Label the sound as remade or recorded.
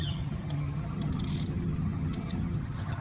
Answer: remade